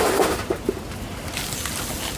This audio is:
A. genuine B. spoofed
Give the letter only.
A